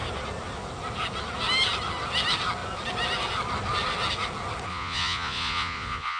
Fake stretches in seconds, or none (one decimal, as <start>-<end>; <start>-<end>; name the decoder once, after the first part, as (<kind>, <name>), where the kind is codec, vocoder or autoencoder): 4.7-6.2 (vocoder, Vocos)